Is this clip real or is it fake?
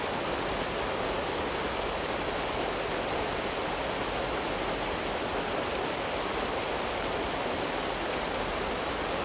real